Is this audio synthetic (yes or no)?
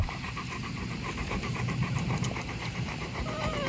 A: yes